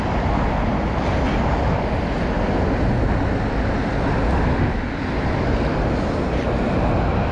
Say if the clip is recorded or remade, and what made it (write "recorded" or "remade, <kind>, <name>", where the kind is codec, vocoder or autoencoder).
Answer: recorded